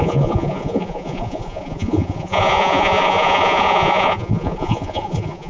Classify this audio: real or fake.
fake